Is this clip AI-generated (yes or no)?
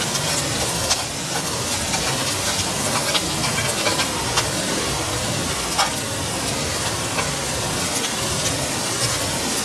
no